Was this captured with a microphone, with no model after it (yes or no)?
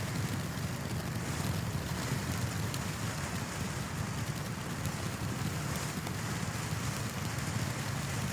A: yes